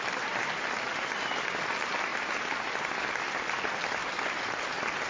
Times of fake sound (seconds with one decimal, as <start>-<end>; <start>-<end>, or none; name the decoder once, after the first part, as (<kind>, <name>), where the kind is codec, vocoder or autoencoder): none